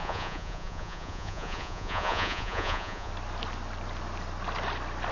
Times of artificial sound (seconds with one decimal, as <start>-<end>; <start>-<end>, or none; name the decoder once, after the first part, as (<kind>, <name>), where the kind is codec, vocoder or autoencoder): 0.0-3.1 (vocoder, Vocos)